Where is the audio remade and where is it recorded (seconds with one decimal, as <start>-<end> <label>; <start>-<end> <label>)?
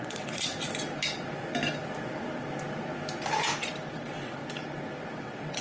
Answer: 0.0-0.5 remade; 0.5-3.9 recorded; 3.9-4.4 remade; 4.4-5.1 recorded; 5.1-5.6 remade